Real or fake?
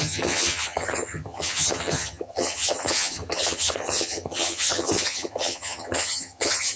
fake